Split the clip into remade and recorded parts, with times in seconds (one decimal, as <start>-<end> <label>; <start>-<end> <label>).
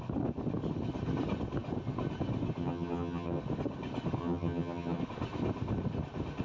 0.0-2.6 recorded; 2.6-3.4 remade; 3.4-4.2 recorded; 4.2-5.0 remade; 5.0-6.4 recorded